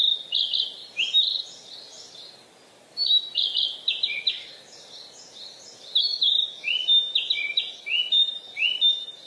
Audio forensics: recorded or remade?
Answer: recorded